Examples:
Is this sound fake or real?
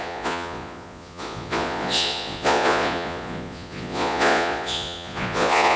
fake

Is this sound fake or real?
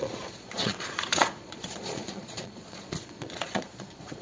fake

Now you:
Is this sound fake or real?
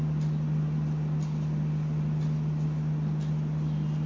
real